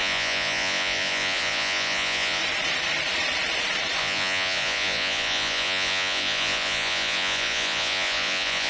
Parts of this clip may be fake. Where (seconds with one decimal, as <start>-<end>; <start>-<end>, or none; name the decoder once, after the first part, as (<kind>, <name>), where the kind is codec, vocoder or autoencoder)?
0.0-2.4 (vocoder, Vocos); 4.0-8.7